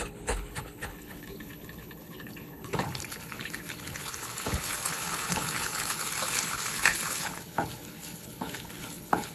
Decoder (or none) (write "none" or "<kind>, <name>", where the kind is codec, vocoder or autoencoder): codec, HILCodec